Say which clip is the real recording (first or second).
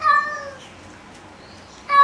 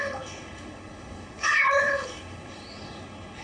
first